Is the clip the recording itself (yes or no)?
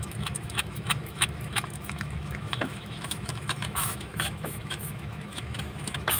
no